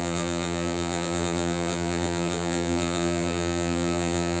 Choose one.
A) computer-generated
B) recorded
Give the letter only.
A